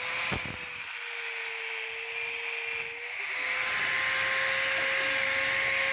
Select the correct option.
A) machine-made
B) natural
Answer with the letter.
B